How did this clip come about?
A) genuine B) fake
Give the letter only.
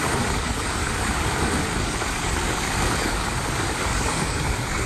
B